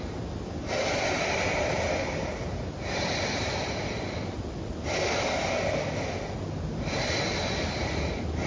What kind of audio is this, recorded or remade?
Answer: recorded